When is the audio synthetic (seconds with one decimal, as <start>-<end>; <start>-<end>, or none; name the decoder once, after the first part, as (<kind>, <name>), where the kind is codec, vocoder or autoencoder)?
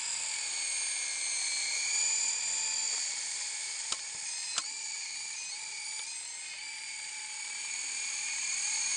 2.8-5.7 (vocoder, BigVGAN v2)